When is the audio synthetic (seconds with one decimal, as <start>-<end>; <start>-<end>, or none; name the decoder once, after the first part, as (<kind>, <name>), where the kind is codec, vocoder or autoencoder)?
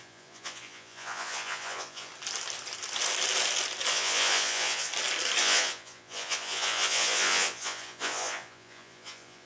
0.0-2.1 (vocoder, Vocos); 3.9-4.9; 5.4-9.5